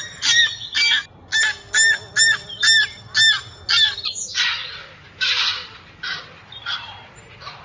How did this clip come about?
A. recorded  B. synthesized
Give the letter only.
A